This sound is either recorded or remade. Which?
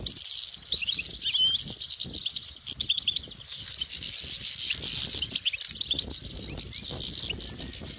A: recorded